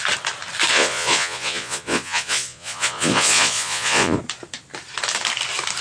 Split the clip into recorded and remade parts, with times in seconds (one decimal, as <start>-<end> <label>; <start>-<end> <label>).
0.0-0.7 recorded; 0.7-4.2 remade; 4.2-5.8 recorded